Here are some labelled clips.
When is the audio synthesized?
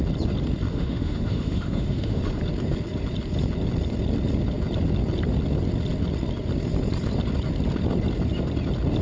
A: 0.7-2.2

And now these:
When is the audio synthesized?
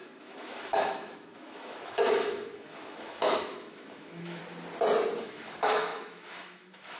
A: 0.0-4.4; 5.2-7.0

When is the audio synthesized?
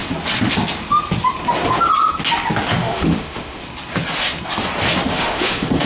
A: 2.8-3.6; 5.1-5.9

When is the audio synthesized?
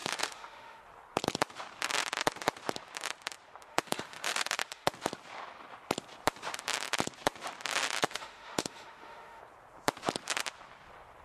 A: 0.0-0.8; 3.7-4.9; 8.0-9.4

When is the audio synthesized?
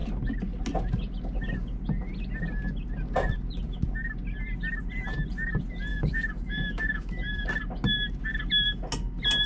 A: 5.9-7.5